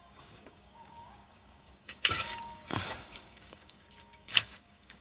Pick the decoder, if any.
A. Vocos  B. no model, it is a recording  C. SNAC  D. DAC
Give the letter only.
D